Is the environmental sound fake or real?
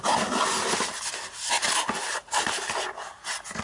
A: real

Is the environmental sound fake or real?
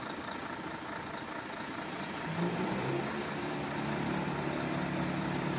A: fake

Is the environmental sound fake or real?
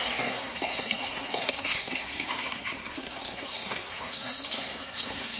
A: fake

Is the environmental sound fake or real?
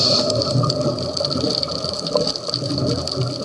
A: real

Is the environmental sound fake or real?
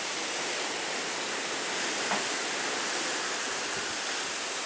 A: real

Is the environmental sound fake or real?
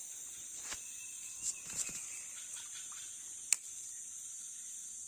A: real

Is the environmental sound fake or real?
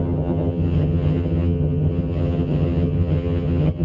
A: fake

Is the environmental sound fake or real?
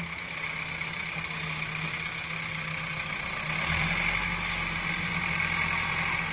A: real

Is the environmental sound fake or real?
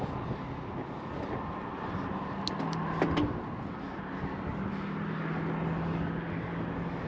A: real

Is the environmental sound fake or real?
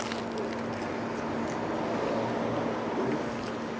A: real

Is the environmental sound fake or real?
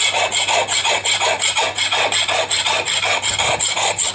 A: real